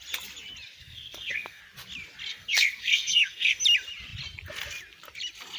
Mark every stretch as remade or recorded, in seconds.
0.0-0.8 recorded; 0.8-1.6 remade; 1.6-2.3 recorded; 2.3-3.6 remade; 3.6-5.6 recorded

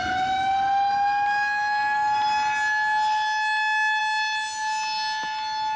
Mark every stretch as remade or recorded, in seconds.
0.0-5.8 recorded

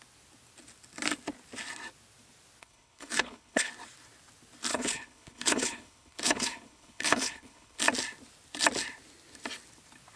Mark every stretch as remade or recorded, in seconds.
0.0-2.6 recorded; 2.6-3.7 remade; 3.7-4.7 recorded; 4.7-7.8 remade; 7.8-10.2 recorded

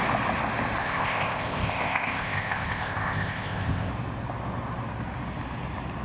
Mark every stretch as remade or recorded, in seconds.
0.0-0.8 recorded; 0.8-3.9 remade; 3.9-6.0 recorded

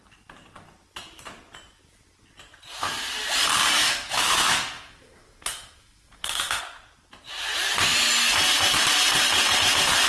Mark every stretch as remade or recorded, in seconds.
0.0-3.8 recorded; 3.8-6.6 remade; 6.6-10.1 recorded

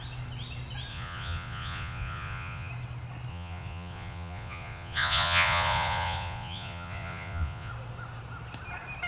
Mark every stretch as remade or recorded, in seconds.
0.0-0.9 recorded; 0.9-2.7 remade; 2.7-3.3 recorded; 3.3-7.7 remade; 7.7-9.1 recorded